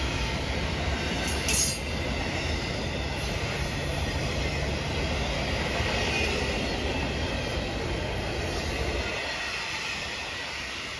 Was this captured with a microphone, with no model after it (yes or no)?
yes